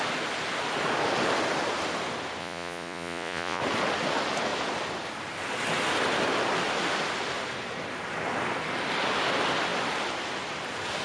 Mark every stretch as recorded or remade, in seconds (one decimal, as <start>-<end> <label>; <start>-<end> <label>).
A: 0.0-2.4 recorded; 2.4-3.6 remade; 3.6-11.0 recorded